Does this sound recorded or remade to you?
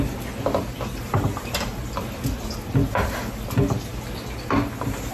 recorded